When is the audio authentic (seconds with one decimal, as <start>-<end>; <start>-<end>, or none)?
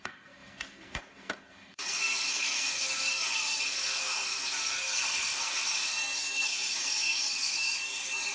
none